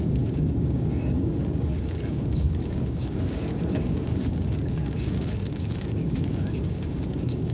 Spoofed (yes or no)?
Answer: yes